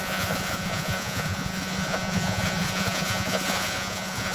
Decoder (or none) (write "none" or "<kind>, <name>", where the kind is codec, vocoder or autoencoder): vocoder, Vocos